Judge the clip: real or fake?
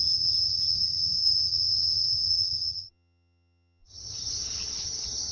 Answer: fake